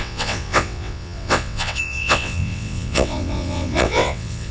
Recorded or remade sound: remade